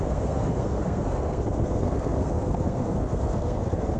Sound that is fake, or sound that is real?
fake